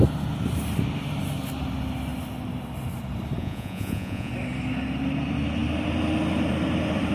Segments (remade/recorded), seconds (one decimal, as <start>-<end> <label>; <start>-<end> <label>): 0.0-3.4 recorded; 3.4-4.3 remade; 4.3-7.1 recorded